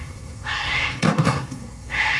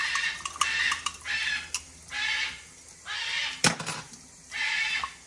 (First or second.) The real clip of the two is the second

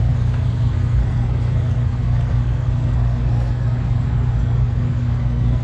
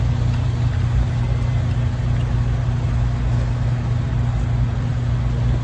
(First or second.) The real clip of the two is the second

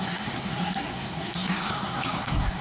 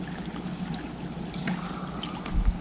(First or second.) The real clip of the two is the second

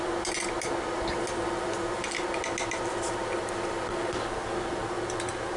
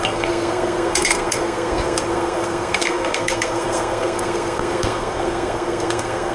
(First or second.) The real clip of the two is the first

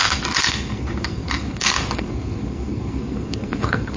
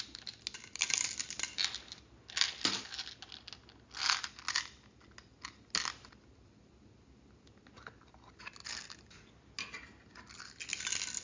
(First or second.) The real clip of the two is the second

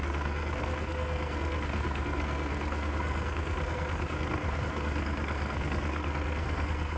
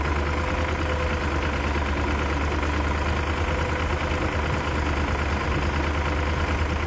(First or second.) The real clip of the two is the second